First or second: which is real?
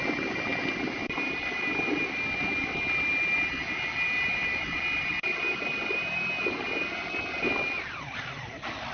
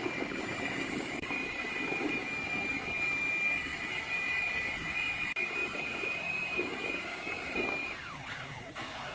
first